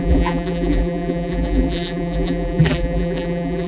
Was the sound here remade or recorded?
remade